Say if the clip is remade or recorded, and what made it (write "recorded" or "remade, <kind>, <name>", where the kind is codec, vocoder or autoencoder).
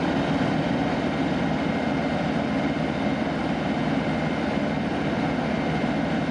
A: remade, vocoder, BigVGAN v2